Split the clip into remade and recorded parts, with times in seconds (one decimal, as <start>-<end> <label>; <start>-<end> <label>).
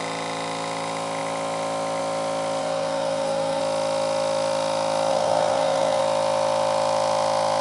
0.0-2.6 recorded; 2.6-3.6 remade; 3.6-5.1 recorded; 5.1-6.0 remade; 6.0-7.6 recorded